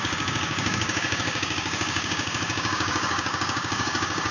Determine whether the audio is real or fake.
fake